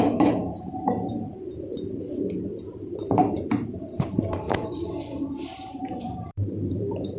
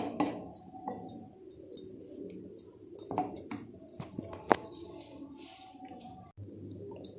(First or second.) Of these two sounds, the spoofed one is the first